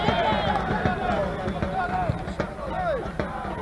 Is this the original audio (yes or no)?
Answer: yes